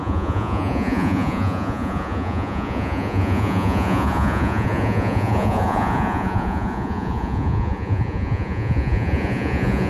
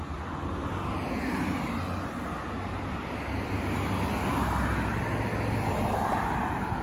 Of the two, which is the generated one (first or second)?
first